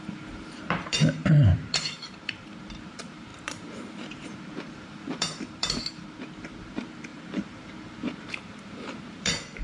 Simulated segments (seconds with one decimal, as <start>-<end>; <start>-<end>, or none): 0.0-9.6